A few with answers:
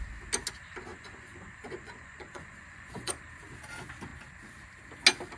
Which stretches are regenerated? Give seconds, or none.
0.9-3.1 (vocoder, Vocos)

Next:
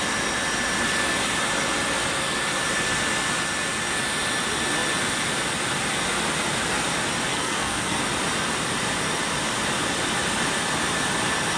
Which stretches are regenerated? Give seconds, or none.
7.3-8.0 (codec, SNAC)

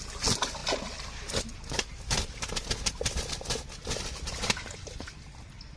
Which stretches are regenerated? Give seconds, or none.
none

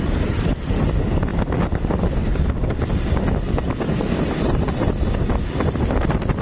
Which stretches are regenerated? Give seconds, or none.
none

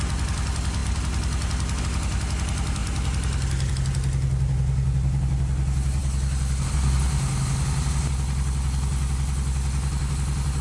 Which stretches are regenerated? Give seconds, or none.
none